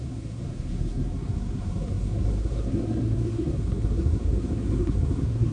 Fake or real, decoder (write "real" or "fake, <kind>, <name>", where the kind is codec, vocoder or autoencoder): fake, codec, SNAC